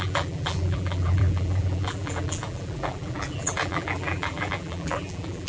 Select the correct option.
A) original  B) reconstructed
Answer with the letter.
B